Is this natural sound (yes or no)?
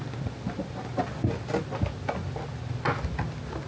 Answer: yes